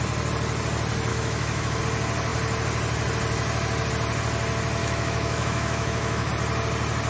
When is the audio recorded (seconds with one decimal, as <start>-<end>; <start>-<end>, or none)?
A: 0.0-1.1; 1.8-4.8; 6.3-7.1